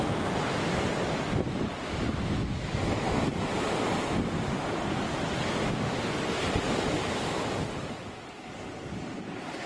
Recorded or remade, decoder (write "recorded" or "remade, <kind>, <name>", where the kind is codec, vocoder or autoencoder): recorded